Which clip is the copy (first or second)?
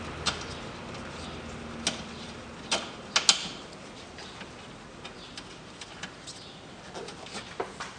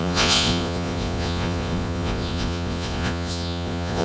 second